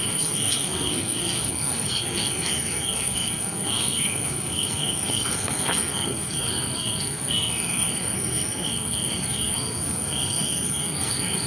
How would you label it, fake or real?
fake